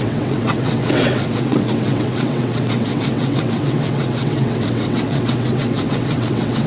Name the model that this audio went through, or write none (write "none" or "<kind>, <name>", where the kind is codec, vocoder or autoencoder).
vocoder, WaveNeXt